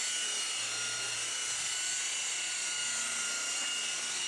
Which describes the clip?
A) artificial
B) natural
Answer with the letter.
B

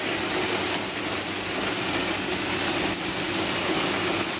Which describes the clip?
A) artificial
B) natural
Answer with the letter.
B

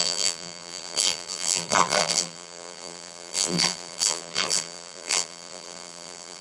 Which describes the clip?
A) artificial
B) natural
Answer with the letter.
A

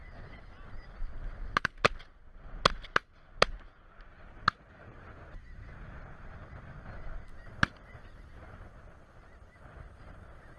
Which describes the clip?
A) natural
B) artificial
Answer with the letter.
A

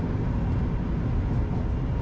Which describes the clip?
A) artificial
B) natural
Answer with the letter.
B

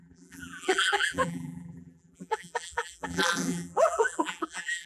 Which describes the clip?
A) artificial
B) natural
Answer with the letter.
A